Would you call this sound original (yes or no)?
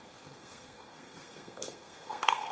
no